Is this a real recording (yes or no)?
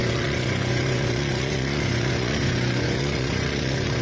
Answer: no